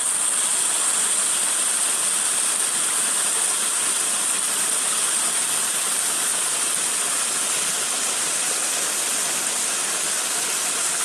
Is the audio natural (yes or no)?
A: yes